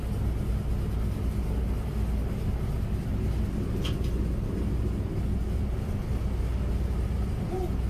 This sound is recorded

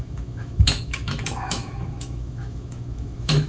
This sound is remade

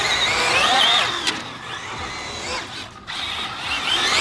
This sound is recorded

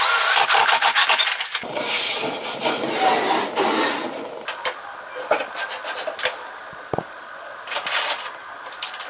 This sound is recorded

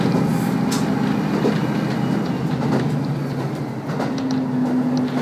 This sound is recorded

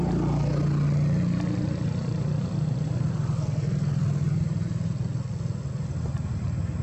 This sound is recorded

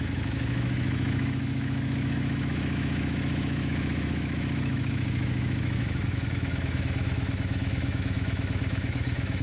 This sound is remade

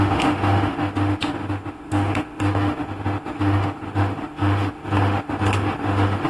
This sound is remade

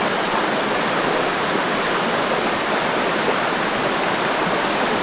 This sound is recorded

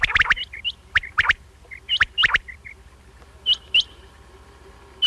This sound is recorded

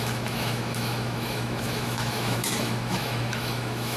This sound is remade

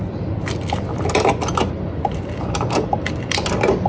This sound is recorded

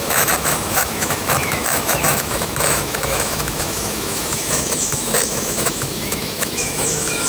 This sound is remade